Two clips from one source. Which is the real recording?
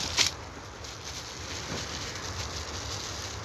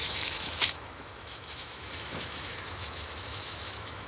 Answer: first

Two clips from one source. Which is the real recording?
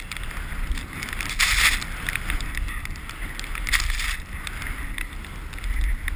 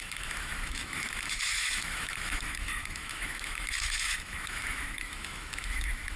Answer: first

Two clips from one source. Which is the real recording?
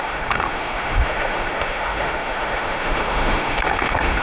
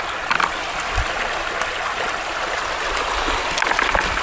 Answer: second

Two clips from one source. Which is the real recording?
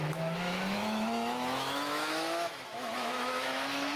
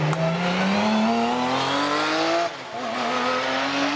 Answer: second